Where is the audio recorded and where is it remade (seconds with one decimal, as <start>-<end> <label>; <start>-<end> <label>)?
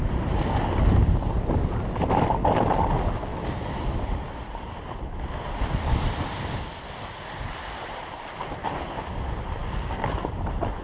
0.0-10.8 recorded